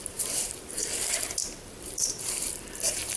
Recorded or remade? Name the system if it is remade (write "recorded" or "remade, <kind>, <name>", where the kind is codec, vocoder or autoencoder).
remade, vocoder, BigVGAN v2